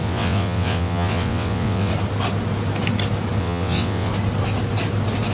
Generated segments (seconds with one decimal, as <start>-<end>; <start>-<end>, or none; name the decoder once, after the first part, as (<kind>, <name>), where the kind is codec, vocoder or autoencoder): 0.0-1.9 (vocoder, WaveNeXt); 3.4-4.1